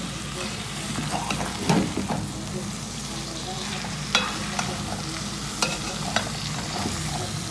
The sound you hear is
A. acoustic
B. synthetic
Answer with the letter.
A